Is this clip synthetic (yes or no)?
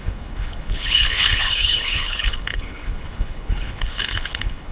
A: yes